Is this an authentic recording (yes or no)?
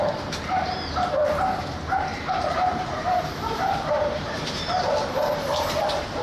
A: no